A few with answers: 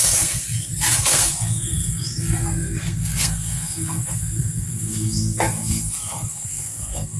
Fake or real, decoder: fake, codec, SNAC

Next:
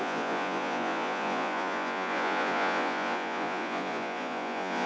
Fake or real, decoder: fake, vocoder, Vocos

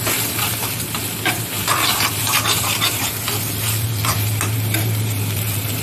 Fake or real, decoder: fake, vocoder, BigVGAN v2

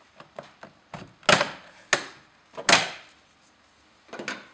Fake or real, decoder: real